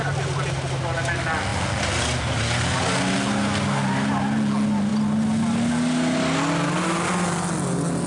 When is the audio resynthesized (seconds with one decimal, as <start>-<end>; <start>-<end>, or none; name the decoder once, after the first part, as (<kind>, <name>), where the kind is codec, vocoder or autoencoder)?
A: none